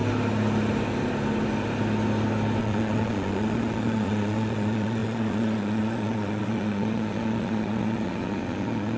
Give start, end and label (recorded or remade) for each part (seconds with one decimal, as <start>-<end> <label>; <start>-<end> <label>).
0.0-2.6 recorded; 2.6-9.0 remade